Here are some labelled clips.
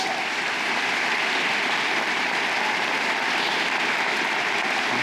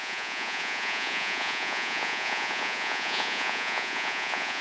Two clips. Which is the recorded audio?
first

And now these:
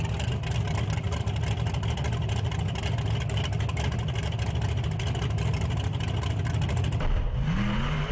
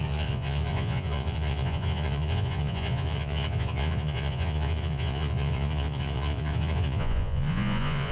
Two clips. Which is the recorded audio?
first